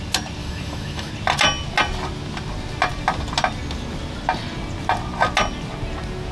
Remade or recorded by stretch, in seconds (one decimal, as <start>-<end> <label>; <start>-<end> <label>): 0.0-0.4 recorded; 0.4-1.1 remade; 1.1-6.3 recorded